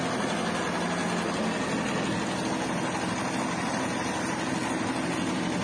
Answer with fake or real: real